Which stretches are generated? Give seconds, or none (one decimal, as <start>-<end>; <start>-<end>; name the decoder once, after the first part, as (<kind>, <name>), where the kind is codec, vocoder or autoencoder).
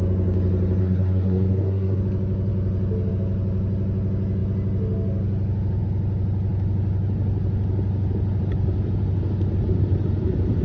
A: 0.8-2.0 (codec, SNAC)